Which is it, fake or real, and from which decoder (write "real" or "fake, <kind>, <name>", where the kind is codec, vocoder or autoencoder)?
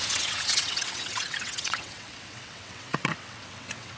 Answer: fake, vocoder, WaveNeXt